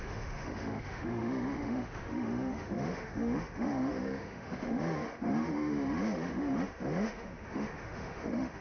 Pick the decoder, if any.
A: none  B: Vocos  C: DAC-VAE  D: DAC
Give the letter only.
C